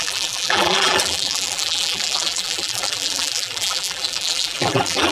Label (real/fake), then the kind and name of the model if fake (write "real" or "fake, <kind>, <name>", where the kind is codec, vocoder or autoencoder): fake, vocoder, BigVGAN v2